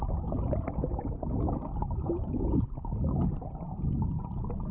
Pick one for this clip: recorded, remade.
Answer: recorded